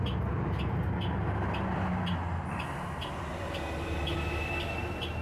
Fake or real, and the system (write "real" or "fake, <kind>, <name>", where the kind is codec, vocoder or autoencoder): real